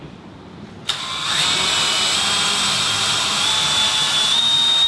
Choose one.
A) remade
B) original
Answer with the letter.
B